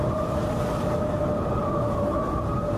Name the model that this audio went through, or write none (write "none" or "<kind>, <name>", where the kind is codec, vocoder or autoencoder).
none